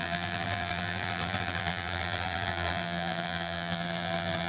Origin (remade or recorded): remade